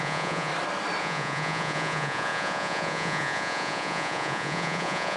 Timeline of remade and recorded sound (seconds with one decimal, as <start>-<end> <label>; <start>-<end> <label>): 0.0-0.5 remade; 0.5-1.0 recorded; 1.0-5.2 remade